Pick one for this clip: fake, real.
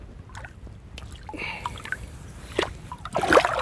real